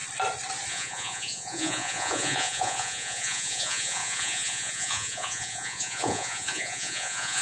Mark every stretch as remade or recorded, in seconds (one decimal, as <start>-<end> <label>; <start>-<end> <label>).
0.0-0.7 recorded; 0.7-7.4 remade